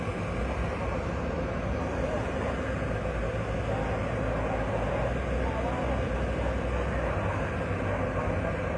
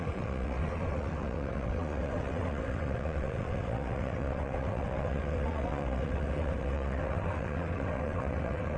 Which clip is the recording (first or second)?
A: first